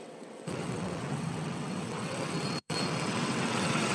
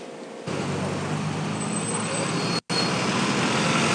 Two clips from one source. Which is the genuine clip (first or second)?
second